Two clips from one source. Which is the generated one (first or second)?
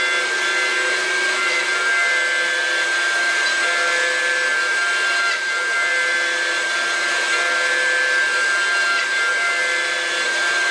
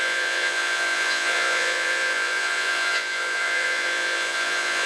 second